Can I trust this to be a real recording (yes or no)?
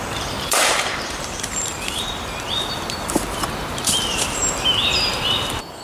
no